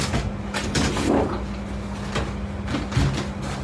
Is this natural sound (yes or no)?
yes